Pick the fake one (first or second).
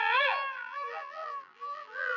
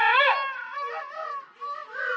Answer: first